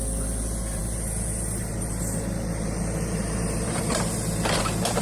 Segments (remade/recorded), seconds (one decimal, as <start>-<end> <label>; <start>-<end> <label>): 0.0-5.0 recorded